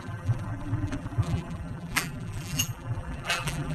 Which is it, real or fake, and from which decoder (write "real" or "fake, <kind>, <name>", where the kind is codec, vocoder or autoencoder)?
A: fake, vocoder, BigVGAN v2